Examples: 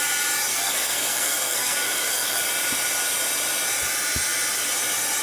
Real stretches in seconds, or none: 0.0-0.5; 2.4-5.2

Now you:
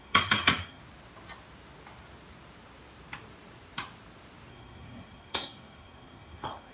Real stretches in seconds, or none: 0.8-4.5

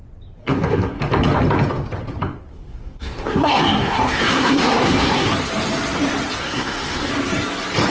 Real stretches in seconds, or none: 0.0-0.4; 1.0-2.5; 5.3-6.4; 7.1-7.9

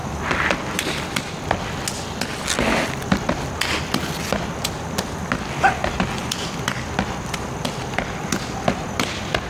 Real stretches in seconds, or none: 0.0-9.5

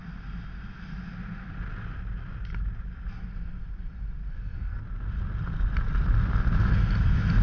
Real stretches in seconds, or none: 0.0-4.3; 4.8-7.4

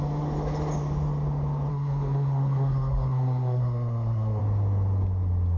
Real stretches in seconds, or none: 0.0-1.7; 4.4-5.6